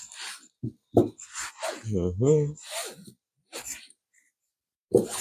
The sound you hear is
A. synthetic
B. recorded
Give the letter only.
B